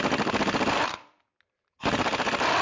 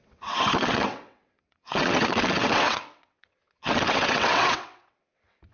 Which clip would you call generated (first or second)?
second